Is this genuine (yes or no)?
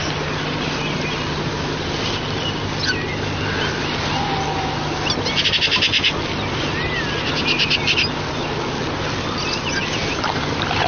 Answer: yes